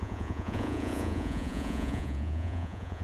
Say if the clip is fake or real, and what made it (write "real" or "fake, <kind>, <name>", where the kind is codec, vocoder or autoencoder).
fake, vocoder, Vocos